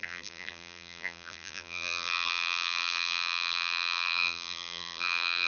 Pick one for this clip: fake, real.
fake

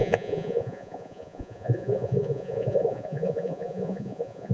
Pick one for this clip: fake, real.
fake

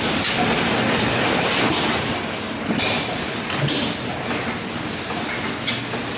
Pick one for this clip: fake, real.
real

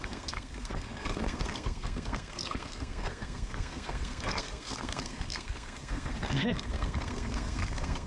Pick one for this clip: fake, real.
fake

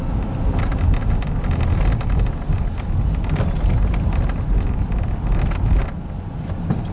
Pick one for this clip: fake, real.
real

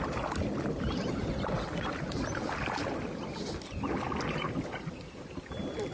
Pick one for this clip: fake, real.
real